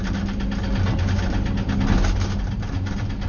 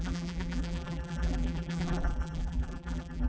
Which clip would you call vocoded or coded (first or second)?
second